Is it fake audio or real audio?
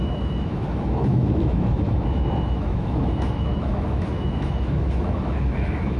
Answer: fake